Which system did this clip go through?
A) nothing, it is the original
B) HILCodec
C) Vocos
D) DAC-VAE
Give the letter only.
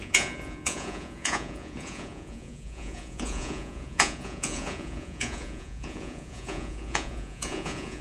C